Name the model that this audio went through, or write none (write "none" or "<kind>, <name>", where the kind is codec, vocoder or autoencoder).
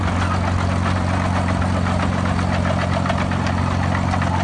none